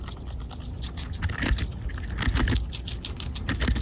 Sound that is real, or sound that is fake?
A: real